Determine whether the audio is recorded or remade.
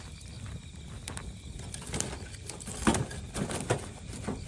recorded